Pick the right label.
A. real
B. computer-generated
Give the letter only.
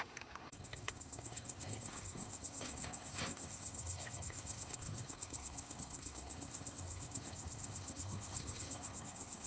B